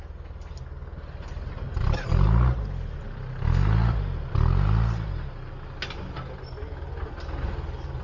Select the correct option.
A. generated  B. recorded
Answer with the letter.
B